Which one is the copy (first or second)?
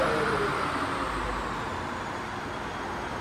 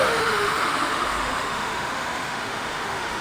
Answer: second